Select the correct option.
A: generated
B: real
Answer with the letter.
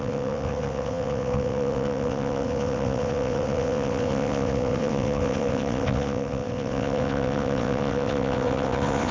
A